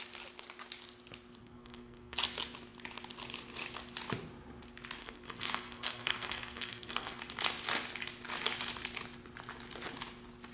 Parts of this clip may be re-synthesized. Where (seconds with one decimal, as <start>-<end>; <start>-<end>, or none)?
1.4-2.2; 5.0-7.2